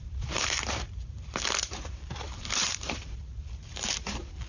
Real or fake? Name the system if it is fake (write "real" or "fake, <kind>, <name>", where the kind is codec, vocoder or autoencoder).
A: fake, vocoder, BigVGAN v2